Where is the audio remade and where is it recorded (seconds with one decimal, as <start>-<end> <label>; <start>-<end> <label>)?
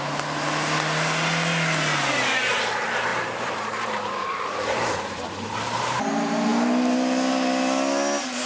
0.0-3.1 recorded; 3.1-6.0 remade; 6.0-8.5 recorded